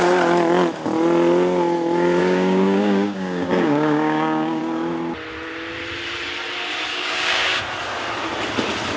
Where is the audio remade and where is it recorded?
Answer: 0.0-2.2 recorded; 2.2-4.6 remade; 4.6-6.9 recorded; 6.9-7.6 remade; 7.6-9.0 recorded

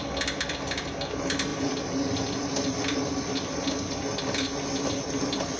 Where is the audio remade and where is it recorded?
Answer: 0.0-5.6 recorded

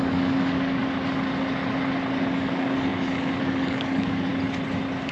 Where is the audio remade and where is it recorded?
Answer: 0.0-0.8 remade; 0.8-2.2 recorded; 2.2-4.3 remade; 4.3-5.1 recorded

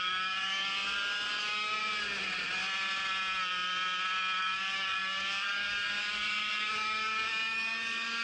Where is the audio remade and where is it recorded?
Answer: 0.0-0.7 remade; 0.7-1.4 recorded; 1.4-1.8 remade; 1.8-4.4 recorded; 4.4-8.2 remade